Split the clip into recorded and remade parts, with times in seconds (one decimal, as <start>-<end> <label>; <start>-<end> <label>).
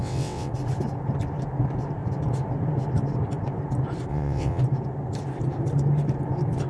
0.0-0.5 remade; 0.5-4.1 recorded; 4.1-4.6 remade; 4.6-6.7 recorded